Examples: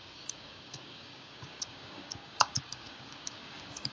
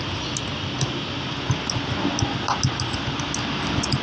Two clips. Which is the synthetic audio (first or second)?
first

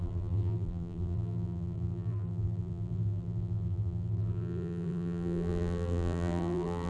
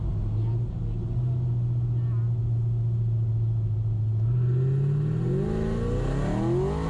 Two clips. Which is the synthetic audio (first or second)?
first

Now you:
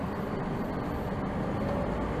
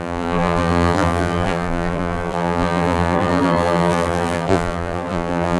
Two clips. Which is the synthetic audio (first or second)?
second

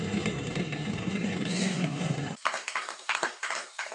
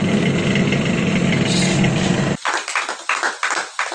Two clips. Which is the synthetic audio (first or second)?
first